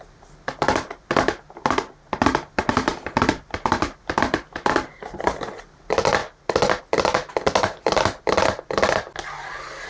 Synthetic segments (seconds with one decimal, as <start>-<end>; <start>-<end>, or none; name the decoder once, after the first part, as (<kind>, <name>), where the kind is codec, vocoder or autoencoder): none